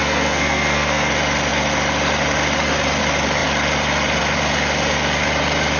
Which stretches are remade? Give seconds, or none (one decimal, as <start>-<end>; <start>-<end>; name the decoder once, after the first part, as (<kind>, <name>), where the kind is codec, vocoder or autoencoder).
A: 0.0-1.1 (codec, SNAC)